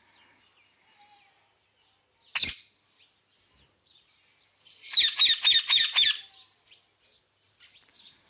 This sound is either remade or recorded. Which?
recorded